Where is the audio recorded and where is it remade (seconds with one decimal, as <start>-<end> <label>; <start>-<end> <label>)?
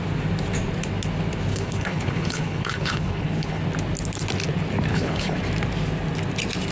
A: 0.0-1.5 recorded; 1.5-3.6 remade; 3.6-4.9 recorded; 4.9-5.4 remade; 5.4-6.7 recorded